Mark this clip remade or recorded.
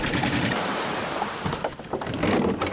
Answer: remade